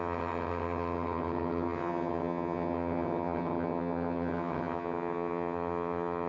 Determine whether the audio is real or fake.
fake